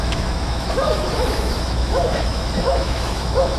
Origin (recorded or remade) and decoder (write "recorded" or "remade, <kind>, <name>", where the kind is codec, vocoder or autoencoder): remade, autoencoder, DAC-VAE